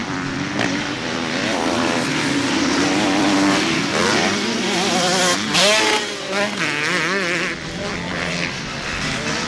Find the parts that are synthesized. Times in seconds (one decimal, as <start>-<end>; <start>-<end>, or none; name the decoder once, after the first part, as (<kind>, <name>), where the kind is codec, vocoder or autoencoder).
0.0-2.8 (vocoder, BigVGAN v2)